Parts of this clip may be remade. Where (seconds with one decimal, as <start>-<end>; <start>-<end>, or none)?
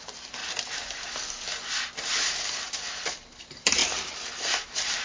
0.0-0.4; 3.4-5.0